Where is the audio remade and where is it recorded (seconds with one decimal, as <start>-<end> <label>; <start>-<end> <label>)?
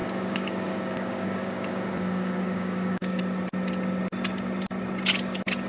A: 0.0-3.2 remade; 3.2-5.7 recorded